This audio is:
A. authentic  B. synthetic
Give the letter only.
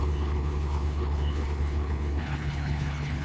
B